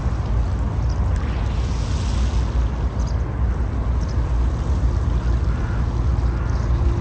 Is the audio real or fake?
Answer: real